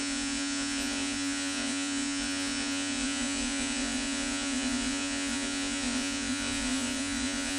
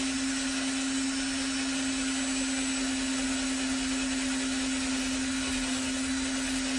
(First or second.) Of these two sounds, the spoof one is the first